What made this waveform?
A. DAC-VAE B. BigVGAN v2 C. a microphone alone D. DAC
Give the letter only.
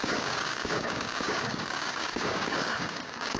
D